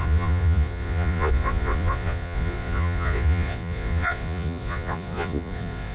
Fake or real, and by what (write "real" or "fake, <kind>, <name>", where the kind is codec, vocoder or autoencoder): fake, vocoder, Vocos